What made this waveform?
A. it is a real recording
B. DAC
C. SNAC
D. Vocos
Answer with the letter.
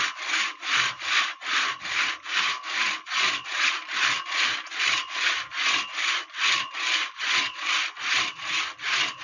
A